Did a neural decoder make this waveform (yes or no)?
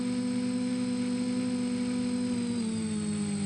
no